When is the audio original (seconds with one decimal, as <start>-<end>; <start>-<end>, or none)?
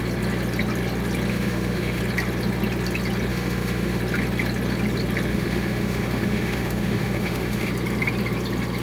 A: 0.0-1.3; 2.0-3.3; 4.0-5.3; 7.7-8.8